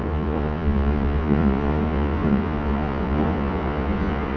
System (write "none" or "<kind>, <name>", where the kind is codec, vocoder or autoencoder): vocoder, Vocos